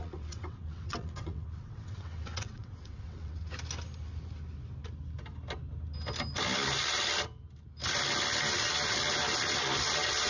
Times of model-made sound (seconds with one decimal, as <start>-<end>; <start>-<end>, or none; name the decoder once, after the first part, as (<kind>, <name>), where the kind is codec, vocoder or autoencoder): 0.0-3.5 (vocoder, WaveNeXt)